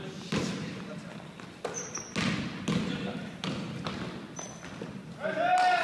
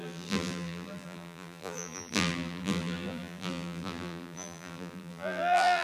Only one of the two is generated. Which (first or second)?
second